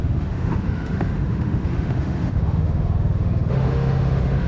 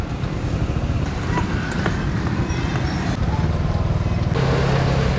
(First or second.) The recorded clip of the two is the second